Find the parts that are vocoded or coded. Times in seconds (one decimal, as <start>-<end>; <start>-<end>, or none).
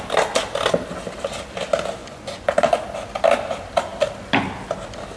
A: 2.0-2.8